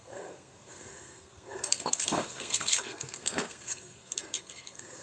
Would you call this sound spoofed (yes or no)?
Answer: yes